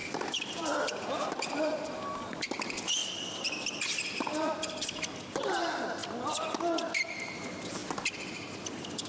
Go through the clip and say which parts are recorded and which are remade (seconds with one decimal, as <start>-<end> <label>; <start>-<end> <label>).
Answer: 0.0-2.5 remade; 2.5-3.0 recorded; 3.0-4.1 remade; 4.1-9.1 recorded